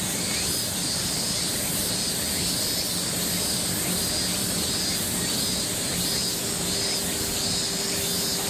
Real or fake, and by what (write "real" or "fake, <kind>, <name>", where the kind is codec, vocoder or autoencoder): real